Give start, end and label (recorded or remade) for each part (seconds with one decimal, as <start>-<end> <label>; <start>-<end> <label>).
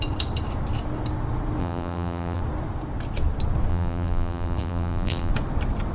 0.0-1.6 recorded; 1.6-2.4 remade; 2.4-3.7 recorded; 3.7-5.3 remade; 5.3-5.9 recorded